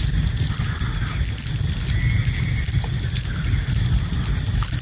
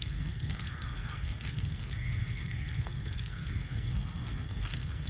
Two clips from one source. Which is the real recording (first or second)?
first